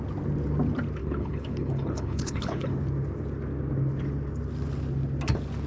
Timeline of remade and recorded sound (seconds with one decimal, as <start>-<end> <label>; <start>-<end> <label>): 0.0-1.0 recorded; 1.0-2.8 remade; 2.8-5.7 recorded